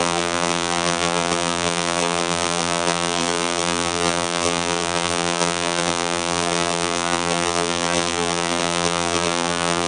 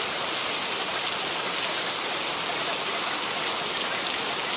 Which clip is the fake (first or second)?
first